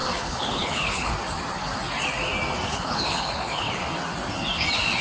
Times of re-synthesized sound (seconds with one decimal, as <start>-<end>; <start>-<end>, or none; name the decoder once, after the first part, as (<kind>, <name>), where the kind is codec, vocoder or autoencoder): 0.0-1.1 (codec, HILCodec); 2.7-3.8